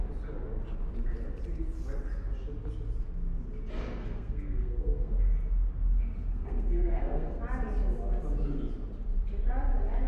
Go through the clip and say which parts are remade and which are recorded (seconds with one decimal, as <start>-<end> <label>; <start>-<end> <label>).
0.0-4.0 recorded; 4.0-5.2 remade; 5.2-6.3 recorded; 6.3-7.4 remade; 7.4-10.1 recorded